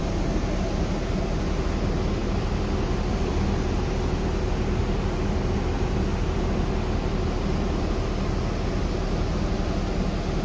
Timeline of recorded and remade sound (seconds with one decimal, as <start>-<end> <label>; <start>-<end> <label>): 0.0-10.4 recorded